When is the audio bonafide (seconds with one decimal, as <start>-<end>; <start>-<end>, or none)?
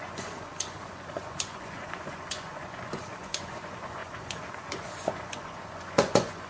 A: none